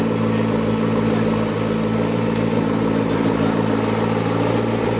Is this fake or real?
real